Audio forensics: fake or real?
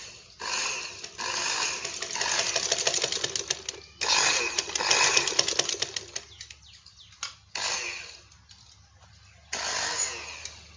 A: real